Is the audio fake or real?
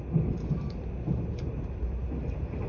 real